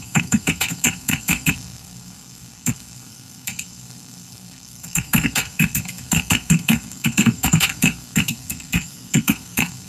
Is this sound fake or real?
fake